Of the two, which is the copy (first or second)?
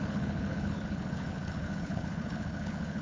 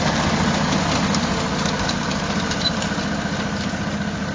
first